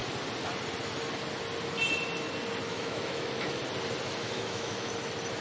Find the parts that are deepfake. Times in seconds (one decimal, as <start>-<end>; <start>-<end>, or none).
2.7-3.6; 4.2-4.9